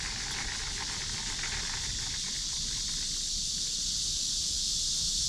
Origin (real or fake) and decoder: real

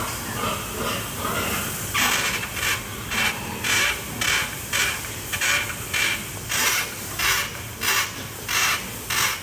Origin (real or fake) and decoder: real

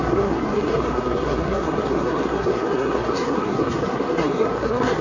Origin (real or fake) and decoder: fake, codec, SNAC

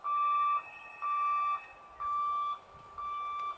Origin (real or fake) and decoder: real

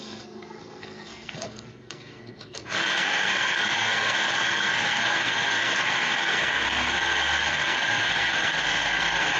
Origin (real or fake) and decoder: fake, codec, SNAC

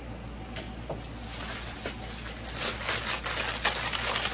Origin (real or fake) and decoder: real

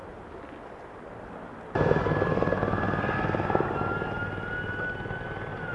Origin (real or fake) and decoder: real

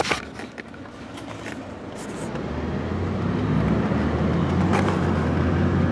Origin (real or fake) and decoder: real